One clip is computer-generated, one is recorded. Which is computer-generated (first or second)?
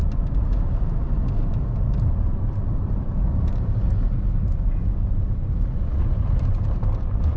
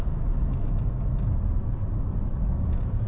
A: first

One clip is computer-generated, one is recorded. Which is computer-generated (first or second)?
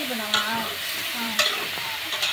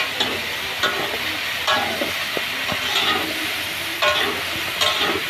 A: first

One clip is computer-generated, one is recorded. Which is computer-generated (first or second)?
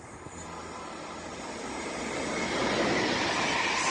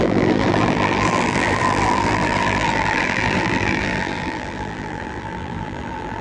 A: second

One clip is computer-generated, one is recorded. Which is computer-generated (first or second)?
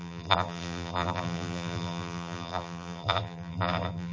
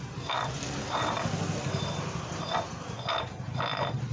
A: first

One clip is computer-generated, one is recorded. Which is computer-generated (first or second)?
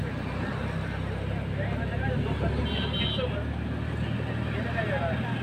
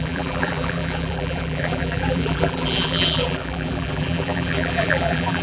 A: second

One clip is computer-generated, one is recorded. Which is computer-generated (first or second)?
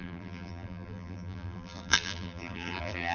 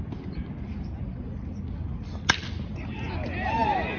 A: first